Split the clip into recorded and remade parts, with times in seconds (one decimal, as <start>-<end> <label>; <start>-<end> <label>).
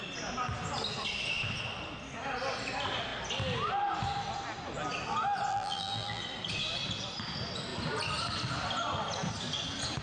0.0-5.5 recorded; 5.5-6.2 remade; 6.2-10.0 recorded